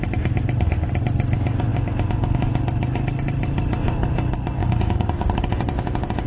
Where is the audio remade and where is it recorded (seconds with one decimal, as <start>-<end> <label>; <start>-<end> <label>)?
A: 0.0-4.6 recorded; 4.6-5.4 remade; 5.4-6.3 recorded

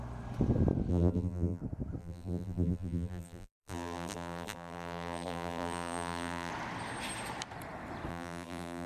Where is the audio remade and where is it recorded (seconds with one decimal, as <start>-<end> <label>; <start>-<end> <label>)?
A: 0.0-0.9 recorded; 0.9-1.6 remade; 1.6-2.0 recorded; 2.0-6.5 remade; 6.5-8.1 recorded; 8.1-8.9 remade

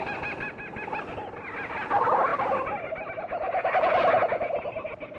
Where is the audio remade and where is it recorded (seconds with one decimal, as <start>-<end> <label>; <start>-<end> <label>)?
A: 0.0-5.2 recorded